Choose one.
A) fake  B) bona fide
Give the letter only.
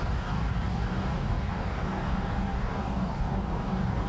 A